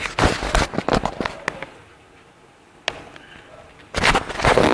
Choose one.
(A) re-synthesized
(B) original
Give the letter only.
B